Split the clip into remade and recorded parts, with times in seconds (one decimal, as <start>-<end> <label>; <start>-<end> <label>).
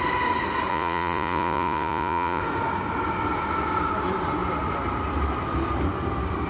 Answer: 0.0-0.7 recorded; 0.7-2.4 remade; 2.4-6.5 recorded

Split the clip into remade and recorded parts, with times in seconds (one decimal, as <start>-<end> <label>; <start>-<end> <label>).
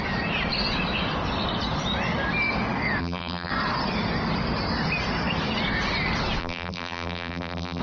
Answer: 0.0-3.0 recorded; 3.0-3.5 remade; 3.5-6.4 recorded; 6.4-7.8 remade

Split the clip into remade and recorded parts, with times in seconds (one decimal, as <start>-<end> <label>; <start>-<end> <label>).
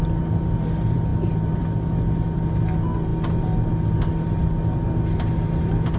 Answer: 0.0-6.0 recorded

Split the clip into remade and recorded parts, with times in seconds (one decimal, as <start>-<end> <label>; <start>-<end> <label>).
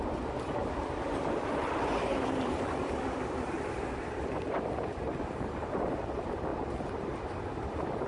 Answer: 0.0-0.6 recorded; 0.6-4.7 remade; 4.7-6.5 recorded; 6.5-8.1 remade